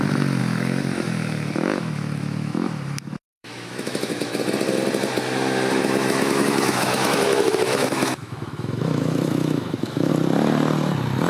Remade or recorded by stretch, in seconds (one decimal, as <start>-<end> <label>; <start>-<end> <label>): 0.0-0.4 recorded; 0.4-4.4 remade; 4.4-5.8 recorded; 5.8-10.1 remade; 10.1-11.3 recorded

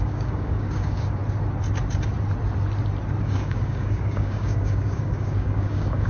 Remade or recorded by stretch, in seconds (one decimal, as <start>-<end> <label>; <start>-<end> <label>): 0.0-1.2 remade; 1.2-3.2 recorded; 3.2-6.1 remade

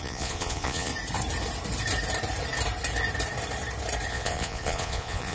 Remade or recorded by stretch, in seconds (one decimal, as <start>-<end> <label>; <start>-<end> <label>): 0.0-0.9 remade; 0.9-4.1 recorded; 4.1-5.3 remade

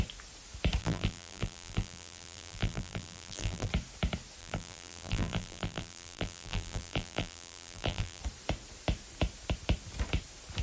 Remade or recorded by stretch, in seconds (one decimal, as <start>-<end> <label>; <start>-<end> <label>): 0.0-0.8 recorded; 0.8-3.7 remade; 3.7-4.4 recorded; 4.4-8.2 remade; 8.2-10.6 recorded

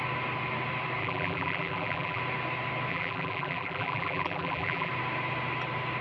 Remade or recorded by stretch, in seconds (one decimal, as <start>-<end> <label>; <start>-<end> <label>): 0.0-1.0 recorded; 1.0-2.2 remade; 2.2-2.9 recorded; 2.9-4.9 remade; 4.9-6.0 recorded

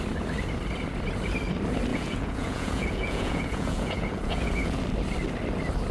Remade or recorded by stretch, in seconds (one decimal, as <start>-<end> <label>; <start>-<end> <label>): 0.0-1.9 recorded; 1.9-4.8 remade; 4.8-5.9 recorded